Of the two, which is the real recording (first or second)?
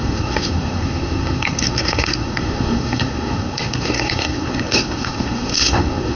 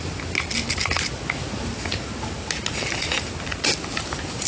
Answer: second